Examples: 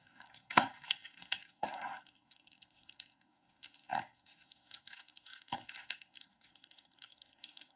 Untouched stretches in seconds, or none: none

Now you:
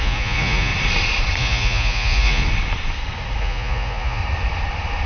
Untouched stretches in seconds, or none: 0.7-1.4; 2.4-3.4; 4.2-5.1

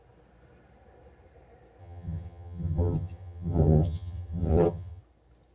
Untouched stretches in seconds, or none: 0.0-1.8; 5.0-5.5

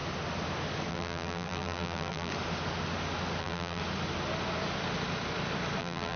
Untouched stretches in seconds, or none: 0.0-0.9; 2.3-3.4; 3.8-5.8